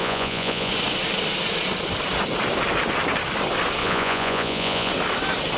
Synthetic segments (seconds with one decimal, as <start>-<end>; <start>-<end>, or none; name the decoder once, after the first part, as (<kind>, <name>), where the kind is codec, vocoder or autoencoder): 0.0-0.7 (vocoder, Vocos); 3.8-4.9